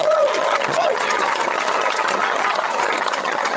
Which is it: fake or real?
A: fake